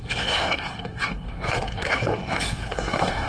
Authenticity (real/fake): fake